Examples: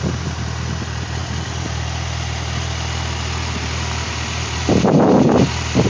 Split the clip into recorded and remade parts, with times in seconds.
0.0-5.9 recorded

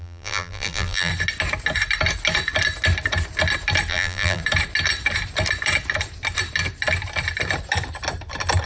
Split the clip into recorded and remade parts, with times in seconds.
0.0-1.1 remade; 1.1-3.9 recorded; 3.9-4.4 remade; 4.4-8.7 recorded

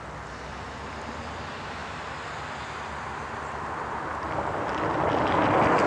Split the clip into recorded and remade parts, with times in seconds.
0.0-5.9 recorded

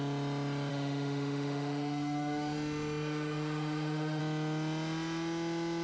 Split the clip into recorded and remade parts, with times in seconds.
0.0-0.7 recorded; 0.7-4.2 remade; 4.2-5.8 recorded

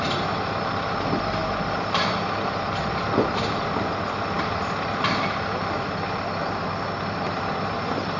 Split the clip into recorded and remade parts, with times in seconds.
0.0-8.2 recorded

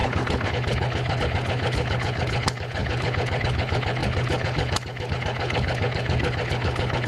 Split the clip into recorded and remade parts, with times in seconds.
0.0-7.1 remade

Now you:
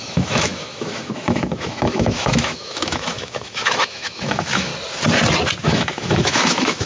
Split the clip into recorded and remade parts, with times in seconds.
0.0-4.7 remade; 4.7-5.6 recorded; 5.6-6.9 remade

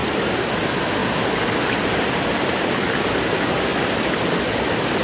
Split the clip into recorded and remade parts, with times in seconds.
0.0-5.0 recorded